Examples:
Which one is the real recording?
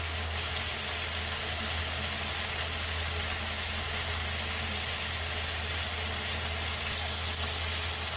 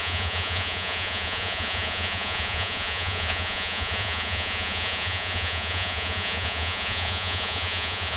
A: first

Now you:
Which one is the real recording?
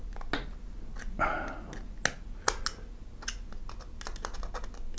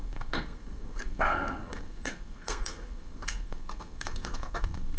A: first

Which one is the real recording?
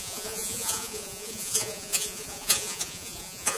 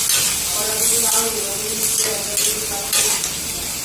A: second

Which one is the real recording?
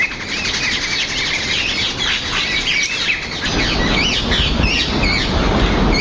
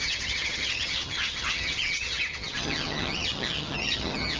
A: first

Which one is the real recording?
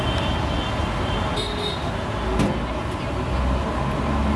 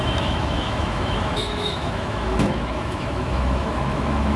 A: first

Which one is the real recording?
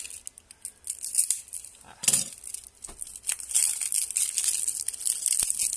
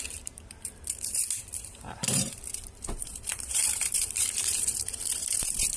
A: first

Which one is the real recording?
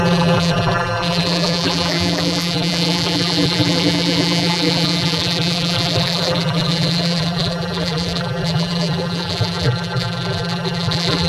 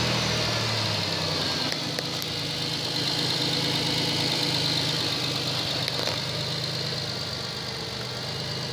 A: second